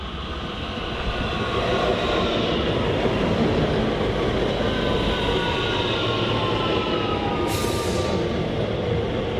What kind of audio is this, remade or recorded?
recorded